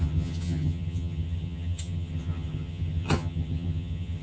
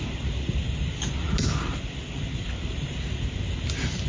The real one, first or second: second